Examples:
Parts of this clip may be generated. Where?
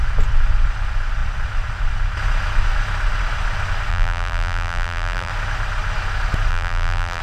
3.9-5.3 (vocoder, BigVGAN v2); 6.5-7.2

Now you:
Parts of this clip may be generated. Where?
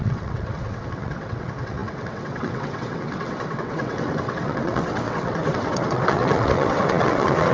0.0-7.5 (vocoder, WaveNeXt)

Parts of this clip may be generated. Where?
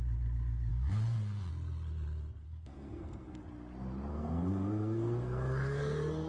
0.7-1.5 (codec, SNAC); 2.4-3.4; 4.1-6.3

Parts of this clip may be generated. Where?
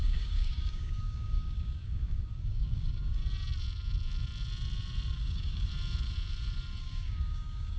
0.0-3.2 (codec, DAC); 5.2-5.7; 6.8-7.8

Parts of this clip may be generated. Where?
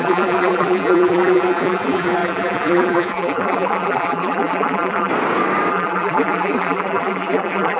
0.0-5.1 (vocoder, BigVGAN v2); 5.7-7.8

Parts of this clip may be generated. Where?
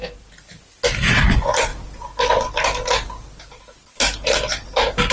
none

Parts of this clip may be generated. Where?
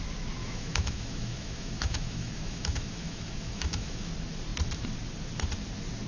0.4-4.1 (autoencoder, DAC-VAE)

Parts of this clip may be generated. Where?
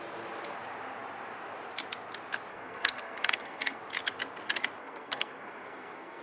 2.5-3.8 (codec, SNAC); 4.8-6.2